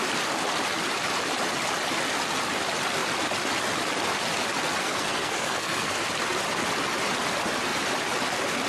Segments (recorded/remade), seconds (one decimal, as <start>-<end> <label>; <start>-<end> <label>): 0.0-4.8 recorded; 4.8-5.9 remade; 5.9-8.7 recorded